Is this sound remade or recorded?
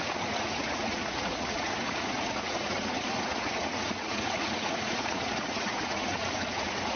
remade